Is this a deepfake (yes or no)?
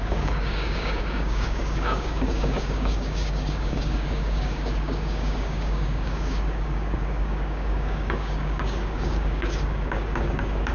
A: yes